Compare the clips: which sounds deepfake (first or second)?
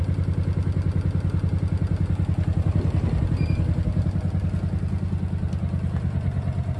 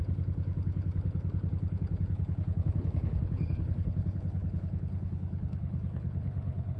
second